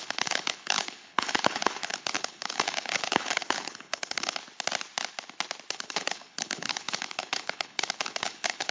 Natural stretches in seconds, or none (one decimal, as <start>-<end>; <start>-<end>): 4.4-5.7

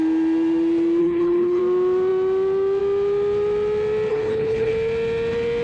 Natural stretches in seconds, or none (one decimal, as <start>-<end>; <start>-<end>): 0.0-1.0; 1.6-4.1; 4.7-5.6